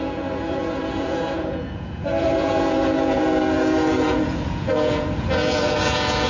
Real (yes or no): no